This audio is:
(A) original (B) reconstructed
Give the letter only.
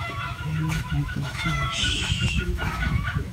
B